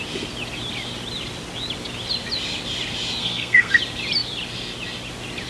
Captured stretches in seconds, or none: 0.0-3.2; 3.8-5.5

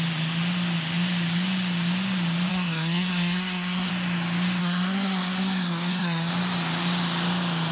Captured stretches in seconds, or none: 0.0-2.5; 3.9-4.6; 6.3-7.7

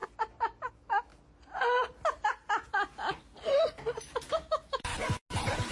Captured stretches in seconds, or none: 0.0-0.6; 1.1-4.5; 4.9-5.7